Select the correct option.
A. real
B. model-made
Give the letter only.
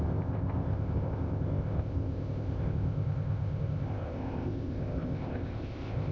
B